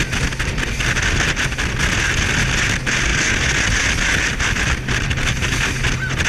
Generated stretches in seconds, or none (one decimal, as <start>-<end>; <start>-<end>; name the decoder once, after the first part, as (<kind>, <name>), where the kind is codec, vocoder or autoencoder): none